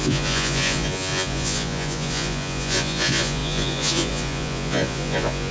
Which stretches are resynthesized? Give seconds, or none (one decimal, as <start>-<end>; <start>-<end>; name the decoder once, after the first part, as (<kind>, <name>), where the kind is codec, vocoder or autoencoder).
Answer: 0.0-5.5 (vocoder, Vocos)